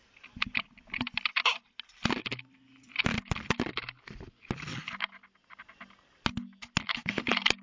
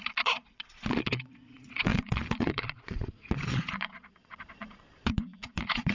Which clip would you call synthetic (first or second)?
second